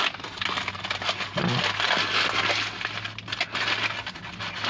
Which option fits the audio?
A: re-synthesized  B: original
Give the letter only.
B